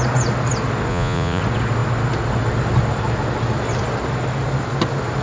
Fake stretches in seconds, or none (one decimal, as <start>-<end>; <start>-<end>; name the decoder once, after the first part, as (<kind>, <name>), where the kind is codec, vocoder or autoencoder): 0.9-1.4 (vocoder, Vocos)